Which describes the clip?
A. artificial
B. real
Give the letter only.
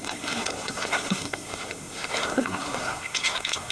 A